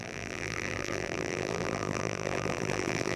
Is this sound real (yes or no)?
no